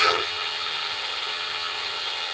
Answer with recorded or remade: remade